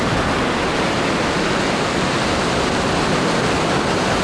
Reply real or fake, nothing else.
real